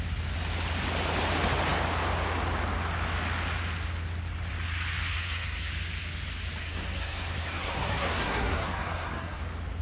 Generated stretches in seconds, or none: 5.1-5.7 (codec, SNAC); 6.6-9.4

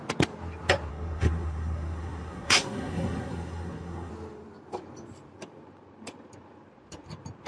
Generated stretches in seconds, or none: 0.9-4.1 (codec, SNAC)